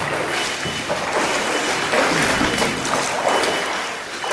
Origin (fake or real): real